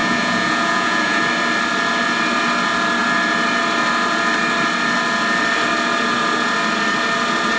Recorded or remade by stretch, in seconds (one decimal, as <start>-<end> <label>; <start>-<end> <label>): 0.0-1.2 remade; 1.2-7.6 recorded